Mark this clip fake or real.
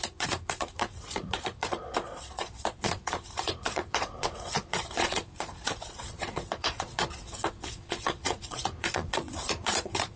fake